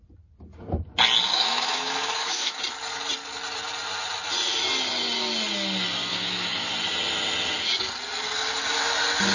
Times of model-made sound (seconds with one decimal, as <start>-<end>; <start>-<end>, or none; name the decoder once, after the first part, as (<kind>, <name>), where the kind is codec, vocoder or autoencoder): 1.3-2.6 (autoencoder, DAC-VAE); 6.1-6.7